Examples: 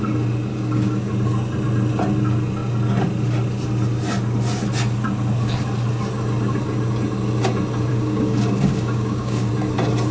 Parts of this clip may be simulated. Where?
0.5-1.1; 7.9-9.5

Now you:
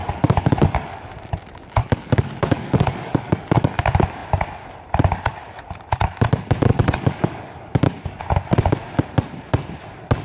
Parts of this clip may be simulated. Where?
0.0-1.1; 1.8-3.8; 6.7-8.2

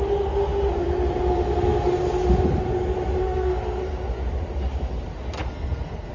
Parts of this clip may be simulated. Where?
3.2-3.8; 5.4-6.1